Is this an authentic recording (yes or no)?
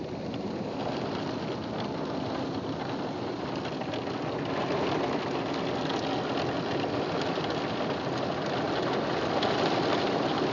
yes